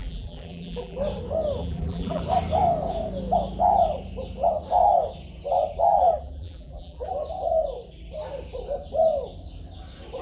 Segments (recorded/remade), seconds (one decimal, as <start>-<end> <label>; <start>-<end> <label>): 0.0-1.0 remade; 1.0-1.6 recorded; 1.6-2.2 remade; 2.2-5.9 recorded; 5.9-7.1 remade; 7.1-10.2 recorded